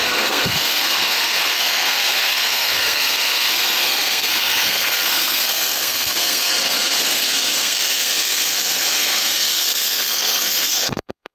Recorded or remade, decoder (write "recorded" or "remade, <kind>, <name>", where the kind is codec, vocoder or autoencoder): remade, codec, SNAC